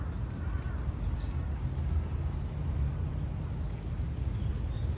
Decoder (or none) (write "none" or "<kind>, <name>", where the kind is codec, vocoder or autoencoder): none